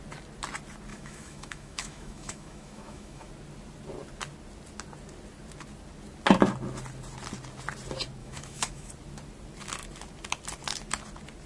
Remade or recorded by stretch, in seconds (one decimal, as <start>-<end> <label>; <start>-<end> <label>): 0.0-0.9 recorded; 0.9-3.3 remade; 3.3-8.2 recorded; 8.2-8.9 remade; 8.9-11.5 recorded